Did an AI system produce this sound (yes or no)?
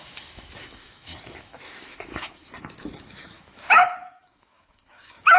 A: yes